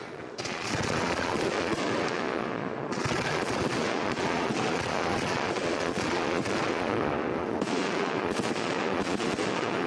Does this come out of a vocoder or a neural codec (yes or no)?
yes